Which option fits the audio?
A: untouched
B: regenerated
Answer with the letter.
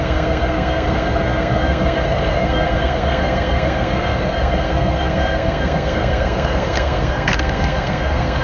B